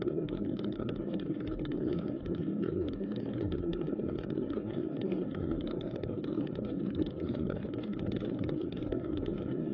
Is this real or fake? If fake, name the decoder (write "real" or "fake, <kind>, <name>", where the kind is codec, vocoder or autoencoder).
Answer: fake, codec, SNAC